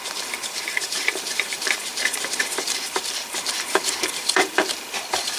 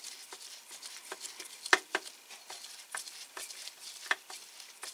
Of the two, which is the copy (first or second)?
first